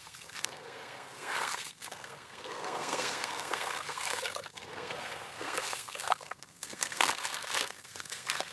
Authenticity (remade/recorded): remade